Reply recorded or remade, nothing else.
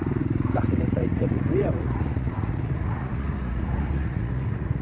remade